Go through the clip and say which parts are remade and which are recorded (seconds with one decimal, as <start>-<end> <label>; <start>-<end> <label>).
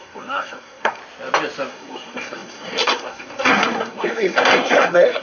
0.0-1.0 remade; 1.0-1.7 recorded; 1.7-5.2 remade